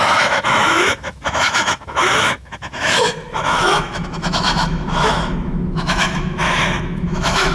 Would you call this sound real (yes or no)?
no